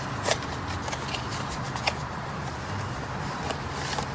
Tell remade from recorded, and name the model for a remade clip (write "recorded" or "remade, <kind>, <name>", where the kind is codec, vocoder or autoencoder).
recorded